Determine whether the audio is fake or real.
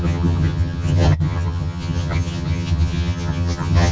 fake